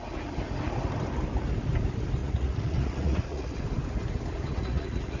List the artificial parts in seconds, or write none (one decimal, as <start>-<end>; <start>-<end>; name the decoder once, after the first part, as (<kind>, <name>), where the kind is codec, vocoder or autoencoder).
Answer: 2.2-3.6 (vocoder, Vocos); 4.5-5.2